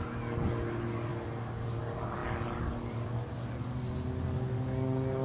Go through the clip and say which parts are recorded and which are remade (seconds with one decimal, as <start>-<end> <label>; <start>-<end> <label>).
0.0-5.2 recorded